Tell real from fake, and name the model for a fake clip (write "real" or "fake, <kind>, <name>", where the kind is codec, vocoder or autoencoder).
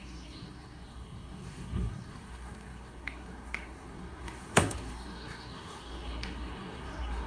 fake, codec, SNAC